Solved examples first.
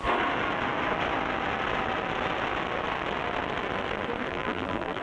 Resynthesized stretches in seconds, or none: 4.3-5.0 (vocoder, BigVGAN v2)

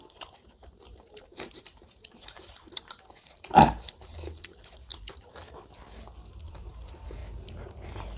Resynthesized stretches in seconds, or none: 0.0-4.9 (vocoder, BigVGAN v2); 6.5-7.2

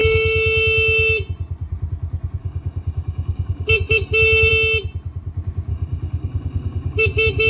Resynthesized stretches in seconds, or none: 2.4-4.5 (codec, DAC); 5.7-7.5

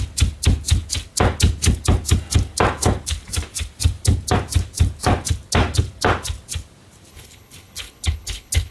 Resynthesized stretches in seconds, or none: 7.1-8.7 (codec, HILCodec)

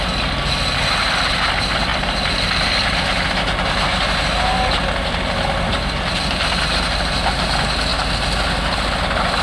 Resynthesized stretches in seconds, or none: none

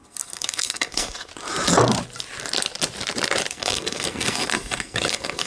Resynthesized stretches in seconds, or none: 0.0-1.3 (codec, SNAC); 3.5-5.5